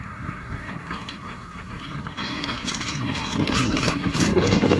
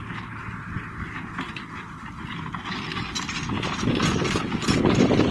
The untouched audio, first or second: second